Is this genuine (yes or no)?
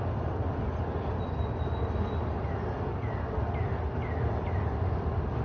yes